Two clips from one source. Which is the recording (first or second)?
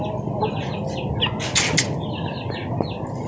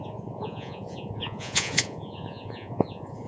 first